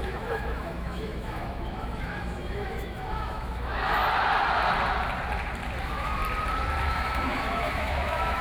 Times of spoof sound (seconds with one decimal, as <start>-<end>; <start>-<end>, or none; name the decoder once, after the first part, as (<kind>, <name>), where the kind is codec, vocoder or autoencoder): 0.0-4.0 (autoencoder, DAC-VAE); 5.8-6.2; 6.8-8.4